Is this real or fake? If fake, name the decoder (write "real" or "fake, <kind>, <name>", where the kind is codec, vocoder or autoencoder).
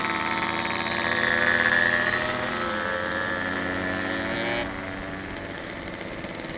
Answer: real